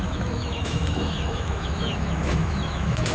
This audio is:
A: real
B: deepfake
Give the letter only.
B